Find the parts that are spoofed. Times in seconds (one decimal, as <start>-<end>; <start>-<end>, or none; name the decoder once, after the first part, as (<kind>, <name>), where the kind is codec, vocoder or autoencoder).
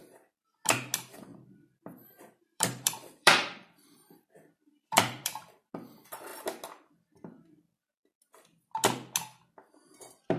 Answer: 1.3-5.7 (vocoder, BigVGAN v2)